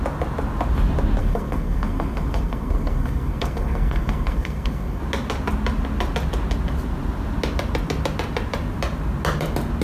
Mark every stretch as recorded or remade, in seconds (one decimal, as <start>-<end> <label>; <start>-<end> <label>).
0.0-1.2 recorded; 1.2-5.0 remade; 5.0-9.8 recorded